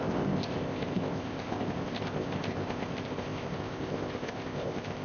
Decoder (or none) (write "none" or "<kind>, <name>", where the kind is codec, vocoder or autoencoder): codec, ZipCodec